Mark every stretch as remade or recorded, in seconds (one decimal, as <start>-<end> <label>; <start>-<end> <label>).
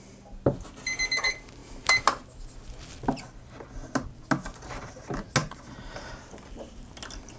0.0-7.4 recorded